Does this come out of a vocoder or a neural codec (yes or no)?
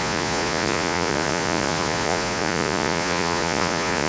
yes